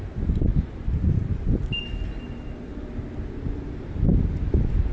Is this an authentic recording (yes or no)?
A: yes